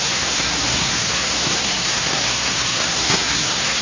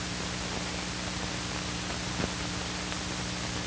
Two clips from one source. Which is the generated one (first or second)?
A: first